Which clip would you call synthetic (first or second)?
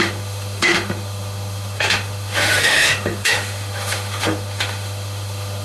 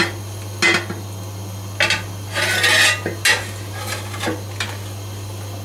first